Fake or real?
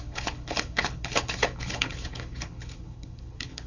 fake